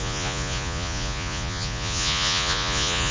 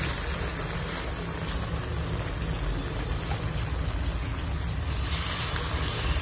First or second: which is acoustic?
second